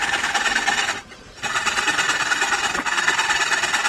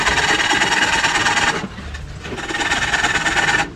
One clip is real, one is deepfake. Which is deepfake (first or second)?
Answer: first